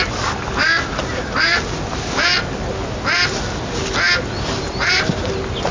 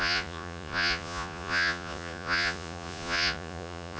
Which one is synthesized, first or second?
second